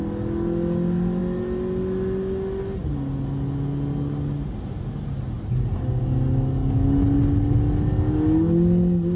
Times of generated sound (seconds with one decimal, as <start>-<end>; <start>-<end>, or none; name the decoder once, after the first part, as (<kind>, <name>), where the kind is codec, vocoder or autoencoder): none